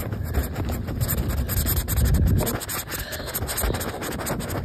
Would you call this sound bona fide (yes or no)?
yes